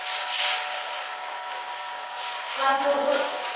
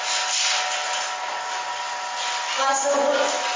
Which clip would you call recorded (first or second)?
second